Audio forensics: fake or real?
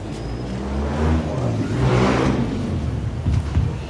real